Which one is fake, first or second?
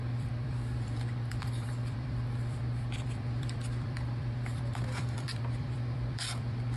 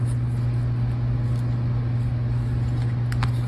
first